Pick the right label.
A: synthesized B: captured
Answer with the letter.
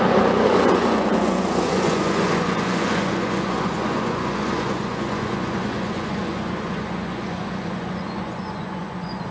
A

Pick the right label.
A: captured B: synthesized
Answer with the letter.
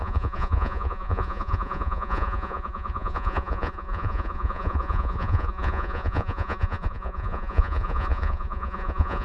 B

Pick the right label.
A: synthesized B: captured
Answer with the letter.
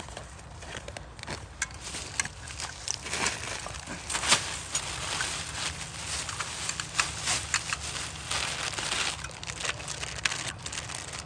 B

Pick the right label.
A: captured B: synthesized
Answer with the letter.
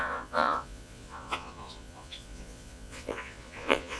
B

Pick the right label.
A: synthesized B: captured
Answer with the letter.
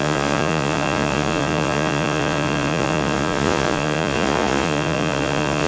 A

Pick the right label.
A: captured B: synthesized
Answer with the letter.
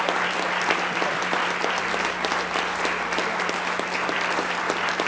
A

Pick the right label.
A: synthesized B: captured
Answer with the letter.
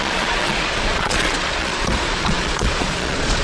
A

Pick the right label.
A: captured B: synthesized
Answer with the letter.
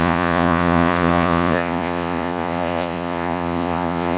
B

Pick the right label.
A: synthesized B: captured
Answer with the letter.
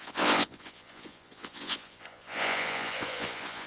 A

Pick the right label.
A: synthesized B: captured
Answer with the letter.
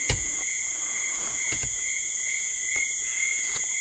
A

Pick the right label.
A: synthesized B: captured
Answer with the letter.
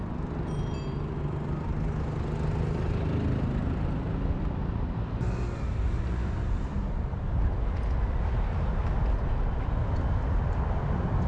B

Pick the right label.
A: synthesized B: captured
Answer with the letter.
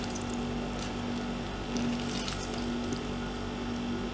B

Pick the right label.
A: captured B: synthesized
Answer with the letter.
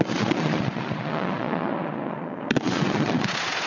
B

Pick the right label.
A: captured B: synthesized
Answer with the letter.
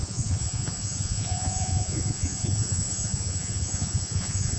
B